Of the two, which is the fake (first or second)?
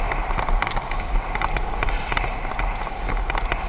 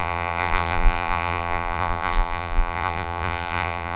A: second